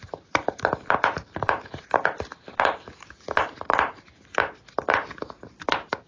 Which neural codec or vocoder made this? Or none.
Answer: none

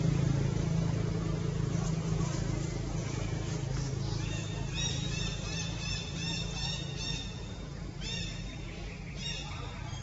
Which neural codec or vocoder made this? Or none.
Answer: none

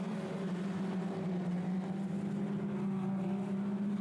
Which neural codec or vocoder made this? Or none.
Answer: none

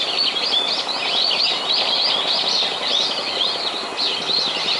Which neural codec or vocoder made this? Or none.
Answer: none